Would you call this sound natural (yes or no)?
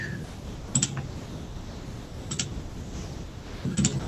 yes